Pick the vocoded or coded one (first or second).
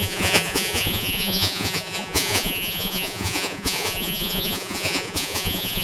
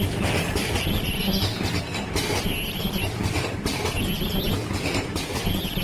first